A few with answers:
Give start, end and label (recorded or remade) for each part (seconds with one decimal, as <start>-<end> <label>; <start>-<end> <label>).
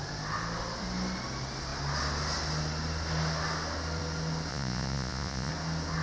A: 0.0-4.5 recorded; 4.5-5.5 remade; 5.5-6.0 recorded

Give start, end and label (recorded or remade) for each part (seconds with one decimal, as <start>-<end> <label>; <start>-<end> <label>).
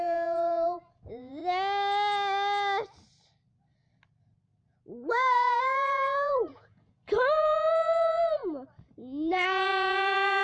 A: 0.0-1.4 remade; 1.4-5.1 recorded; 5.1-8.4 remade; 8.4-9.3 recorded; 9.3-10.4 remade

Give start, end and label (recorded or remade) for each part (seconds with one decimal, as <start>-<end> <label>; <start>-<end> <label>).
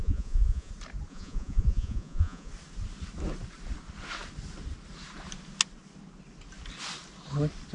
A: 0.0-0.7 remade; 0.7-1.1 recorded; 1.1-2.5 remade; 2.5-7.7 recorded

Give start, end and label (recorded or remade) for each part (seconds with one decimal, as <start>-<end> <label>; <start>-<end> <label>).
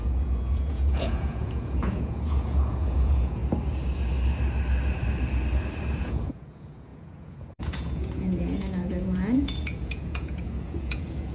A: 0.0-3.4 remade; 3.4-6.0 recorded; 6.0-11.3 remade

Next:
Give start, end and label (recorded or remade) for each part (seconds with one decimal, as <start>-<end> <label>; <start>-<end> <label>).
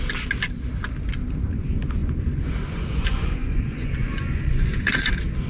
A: 0.0-2.0 recorded; 2.0-5.1 remade; 5.1-5.5 recorded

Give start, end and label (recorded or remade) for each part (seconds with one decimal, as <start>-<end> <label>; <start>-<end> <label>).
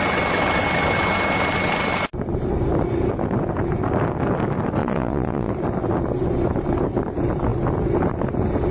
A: 0.0-4.8 recorded; 4.8-5.5 remade; 5.5-8.7 recorded